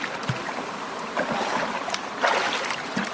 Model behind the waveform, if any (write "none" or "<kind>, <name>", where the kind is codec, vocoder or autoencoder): none